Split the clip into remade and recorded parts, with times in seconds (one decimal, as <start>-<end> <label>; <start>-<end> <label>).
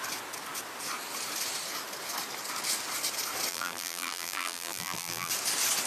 0.0-3.5 recorded; 3.5-5.3 remade; 5.3-5.9 recorded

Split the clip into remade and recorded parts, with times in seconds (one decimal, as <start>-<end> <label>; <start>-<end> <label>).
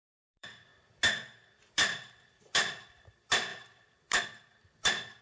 0.0-0.7 remade; 0.7-1.6 recorded; 1.6-5.2 remade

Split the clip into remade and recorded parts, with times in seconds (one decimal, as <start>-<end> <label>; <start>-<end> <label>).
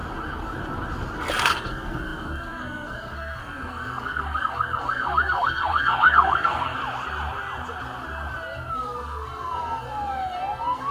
0.0-1.4 recorded; 1.4-6.8 remade; 6.8-8.7 recorded; 8.7-10.9 remade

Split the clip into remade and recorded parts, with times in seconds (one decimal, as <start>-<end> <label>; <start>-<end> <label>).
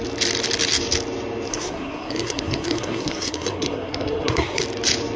0.0-1.5 recorded; 1.5-4.6 remade; 4.6-5.2 recorded